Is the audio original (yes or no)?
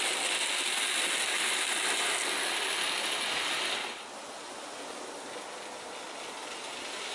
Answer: yes